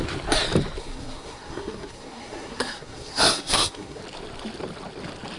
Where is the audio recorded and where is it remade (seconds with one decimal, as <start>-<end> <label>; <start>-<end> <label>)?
0.0-0.8 recorded; 0.8-4.0 remade; 4.0-5.4 recorded